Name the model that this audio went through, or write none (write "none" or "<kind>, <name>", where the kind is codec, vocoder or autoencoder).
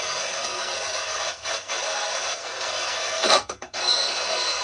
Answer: codec, SNAC